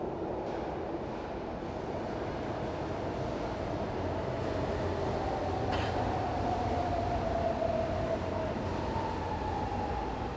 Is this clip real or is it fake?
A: real